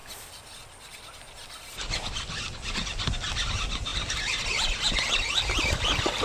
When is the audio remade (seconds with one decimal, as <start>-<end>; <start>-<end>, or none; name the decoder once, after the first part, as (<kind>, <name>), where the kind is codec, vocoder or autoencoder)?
none